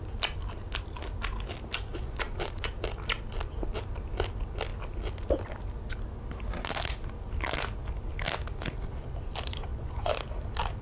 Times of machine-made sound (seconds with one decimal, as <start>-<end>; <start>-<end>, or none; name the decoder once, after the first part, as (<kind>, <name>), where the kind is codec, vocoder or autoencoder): 1.9-2.7 (vocoder, Vocos); 9.7-10.2